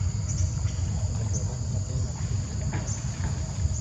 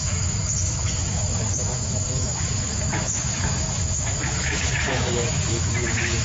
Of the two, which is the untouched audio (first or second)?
first